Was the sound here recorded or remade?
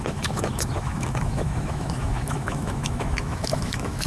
remade